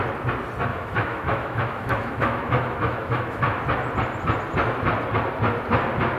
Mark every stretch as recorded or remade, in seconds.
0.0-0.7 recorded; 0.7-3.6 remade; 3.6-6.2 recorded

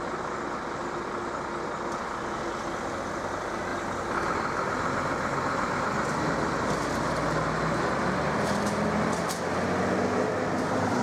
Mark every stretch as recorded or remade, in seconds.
0.0-11.0 recorded

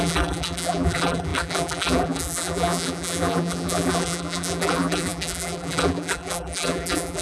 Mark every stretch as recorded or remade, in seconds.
0.0-7.2 remade

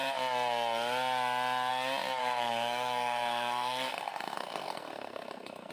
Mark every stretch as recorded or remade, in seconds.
0.0-2.2 recorded; 2.2-5.7 remade